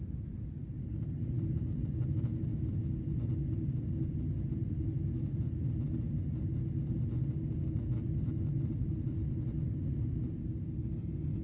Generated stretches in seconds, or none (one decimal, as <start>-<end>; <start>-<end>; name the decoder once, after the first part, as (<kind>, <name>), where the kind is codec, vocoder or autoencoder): 9.8-10.8 (vocoder, BigVGAN v2)